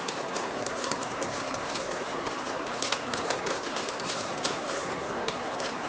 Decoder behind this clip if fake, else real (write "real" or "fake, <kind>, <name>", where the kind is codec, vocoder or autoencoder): fake, codec, SNAC